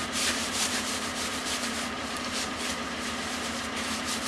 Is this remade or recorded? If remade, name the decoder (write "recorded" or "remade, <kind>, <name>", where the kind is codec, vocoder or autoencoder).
remade, vocoder, BigVGAN v2